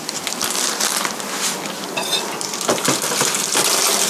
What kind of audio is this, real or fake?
real